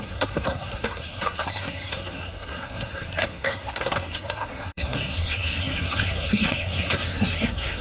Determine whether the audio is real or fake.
fake